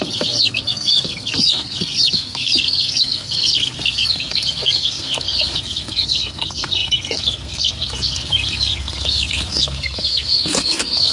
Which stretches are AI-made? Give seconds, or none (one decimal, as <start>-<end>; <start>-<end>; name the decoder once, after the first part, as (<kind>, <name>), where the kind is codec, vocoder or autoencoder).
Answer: 0.0-11.1 (codec, SNAC)